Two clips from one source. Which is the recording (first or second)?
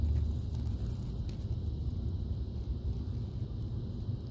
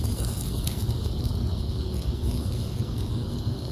first